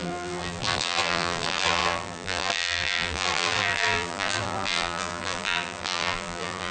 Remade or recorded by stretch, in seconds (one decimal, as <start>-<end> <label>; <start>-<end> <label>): 0.0-6.7 remade